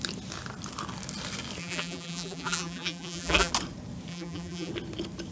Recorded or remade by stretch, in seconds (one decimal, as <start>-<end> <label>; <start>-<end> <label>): 0.0-1.6 recorded; 1.6-3.5 remade; 3.5-4.1 recorded; 4.1-4.7 remade; 4.7-5.3 recorded